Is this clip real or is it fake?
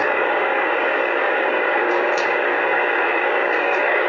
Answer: fake